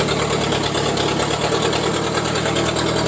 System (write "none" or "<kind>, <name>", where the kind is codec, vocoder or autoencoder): none